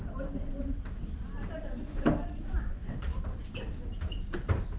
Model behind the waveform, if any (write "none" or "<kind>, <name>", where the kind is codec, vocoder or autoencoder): vocoder, BigVGAN v2